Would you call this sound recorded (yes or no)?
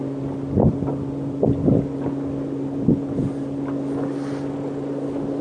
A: yes